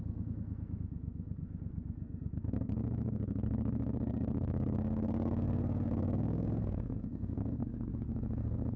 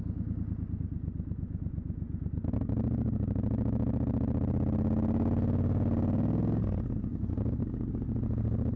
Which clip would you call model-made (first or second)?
first